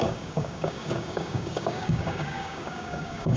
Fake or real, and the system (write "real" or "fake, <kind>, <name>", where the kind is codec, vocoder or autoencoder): fake, codec, DAC